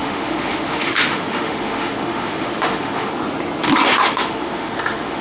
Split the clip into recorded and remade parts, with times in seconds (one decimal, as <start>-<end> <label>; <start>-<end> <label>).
0.0-3.1 remade; 3.1-4.0 recorded; 4.0-5.2 remade